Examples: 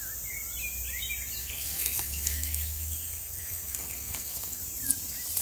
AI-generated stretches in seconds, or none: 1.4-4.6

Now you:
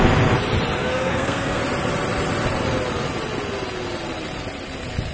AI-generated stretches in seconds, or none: 0.8-1.6

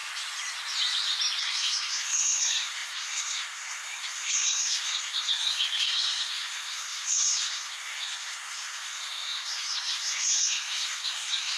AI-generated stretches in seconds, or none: 1.4-11.6

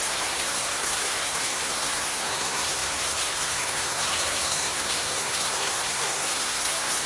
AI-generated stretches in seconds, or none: 0.0-7.1